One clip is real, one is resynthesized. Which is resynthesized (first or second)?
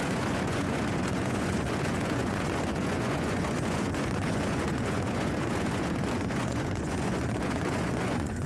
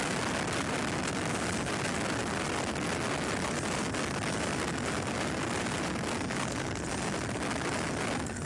first